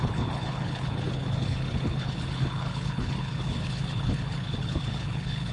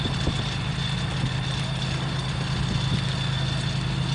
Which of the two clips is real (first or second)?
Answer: second